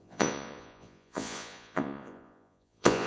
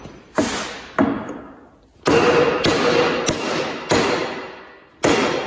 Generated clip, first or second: first